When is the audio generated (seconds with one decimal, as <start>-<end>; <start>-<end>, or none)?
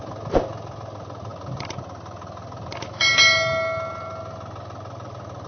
none